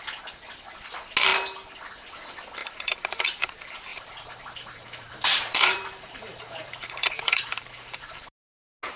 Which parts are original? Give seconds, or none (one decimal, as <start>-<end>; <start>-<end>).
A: 0.0-2.6; 3.5-3.9; 8.3-9.0